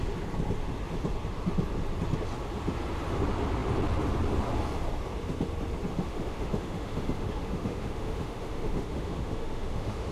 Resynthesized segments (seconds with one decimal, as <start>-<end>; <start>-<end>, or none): 5.9-10.1

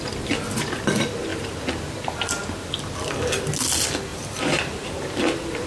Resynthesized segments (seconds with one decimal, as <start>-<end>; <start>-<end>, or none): 4.1-5.7

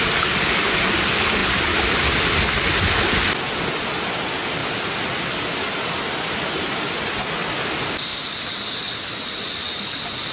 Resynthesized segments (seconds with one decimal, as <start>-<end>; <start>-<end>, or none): 4.6-6.0

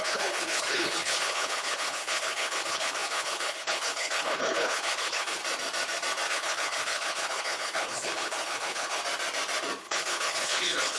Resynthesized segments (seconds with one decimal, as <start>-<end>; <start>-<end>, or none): 0.0-5.4; 6.3-9.0; 9.8-11.0

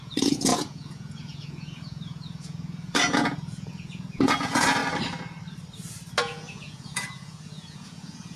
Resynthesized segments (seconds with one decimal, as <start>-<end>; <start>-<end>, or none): 0.0-4.8; 6.2-8.4

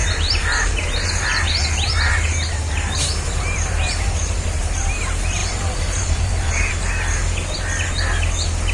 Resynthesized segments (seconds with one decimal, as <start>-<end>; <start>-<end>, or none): 0.0-5.0; 5.4-6.7

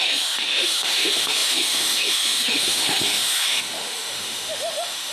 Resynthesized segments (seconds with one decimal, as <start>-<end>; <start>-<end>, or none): 0.0-5.1